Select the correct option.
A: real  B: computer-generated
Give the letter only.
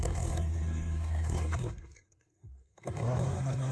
B